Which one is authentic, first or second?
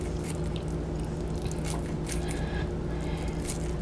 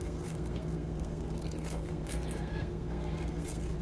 first